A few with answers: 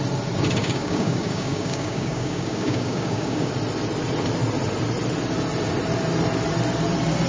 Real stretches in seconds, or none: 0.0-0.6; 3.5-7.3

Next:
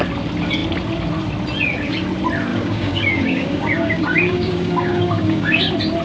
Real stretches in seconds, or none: 0.0-2.5; 5.6-6.0

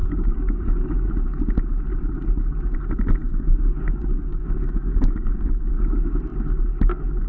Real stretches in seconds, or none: 1.1-3.3; 5.7-7.3

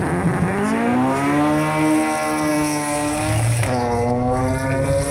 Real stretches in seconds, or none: 0.0-2.5; 4.4-5.1

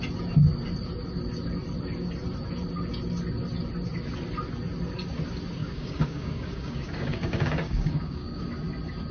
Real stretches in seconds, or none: 0.0-5.6; 8.4-9.1

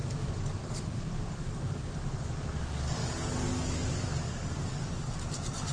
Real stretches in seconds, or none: 2.0-2.6; 3.0-4.0

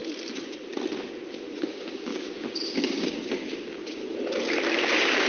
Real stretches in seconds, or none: 0.0-1.6; 4.0-4.7